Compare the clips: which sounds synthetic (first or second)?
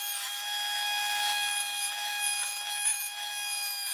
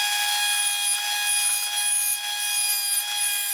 first